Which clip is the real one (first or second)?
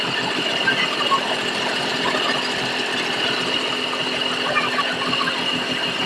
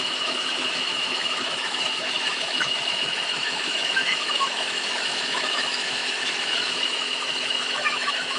first